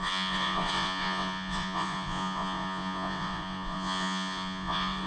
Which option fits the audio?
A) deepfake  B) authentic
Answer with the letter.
A